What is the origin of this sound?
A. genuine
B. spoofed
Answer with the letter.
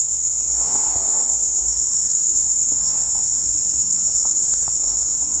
B